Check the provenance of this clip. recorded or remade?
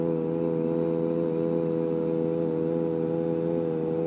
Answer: recorded